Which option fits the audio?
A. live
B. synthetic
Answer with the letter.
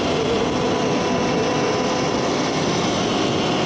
A